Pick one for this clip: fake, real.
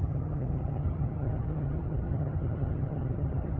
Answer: fake